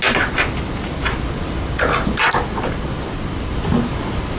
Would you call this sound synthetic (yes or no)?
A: no